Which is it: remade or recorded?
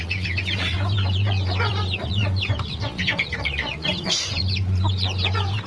remade